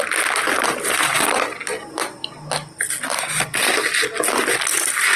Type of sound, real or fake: real